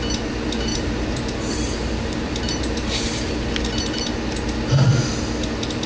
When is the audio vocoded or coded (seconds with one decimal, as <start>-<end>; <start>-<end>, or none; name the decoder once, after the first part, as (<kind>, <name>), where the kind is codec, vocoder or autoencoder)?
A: 0.7-3.3 (vocoder, BigVGAN v2)